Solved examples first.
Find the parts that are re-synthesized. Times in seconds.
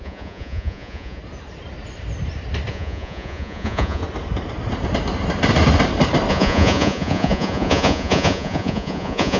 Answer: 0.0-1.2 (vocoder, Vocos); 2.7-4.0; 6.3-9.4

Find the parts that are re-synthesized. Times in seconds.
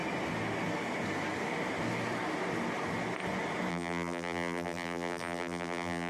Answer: 3.7-6.1 (vocoder, BigVGAN v2)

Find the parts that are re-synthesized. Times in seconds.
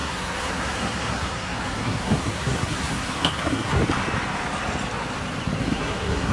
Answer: 0.0-3.8 (codec, SNAC); 5.6-6.3